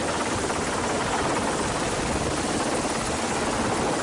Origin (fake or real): real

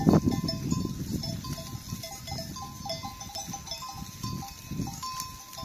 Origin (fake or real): real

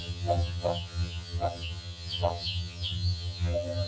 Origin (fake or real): fake